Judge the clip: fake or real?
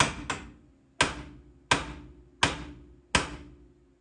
real